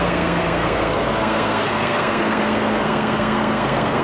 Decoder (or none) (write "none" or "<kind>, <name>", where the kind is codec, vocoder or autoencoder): codec, SNAC